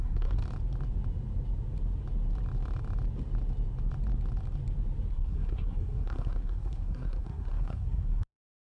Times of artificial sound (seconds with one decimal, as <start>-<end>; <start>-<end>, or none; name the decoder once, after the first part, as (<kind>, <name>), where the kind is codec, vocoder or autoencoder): 0.0-0.4 (codec, SNAC); 5.1-8.8